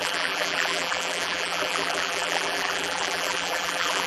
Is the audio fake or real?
fake